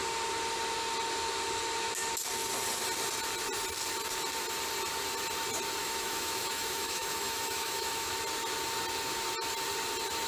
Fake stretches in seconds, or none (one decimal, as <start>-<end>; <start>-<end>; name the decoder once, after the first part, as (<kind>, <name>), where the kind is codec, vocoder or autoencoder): 5.8-8.1 (autoencoder, DAC-VAE)